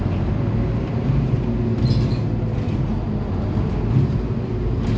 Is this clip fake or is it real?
real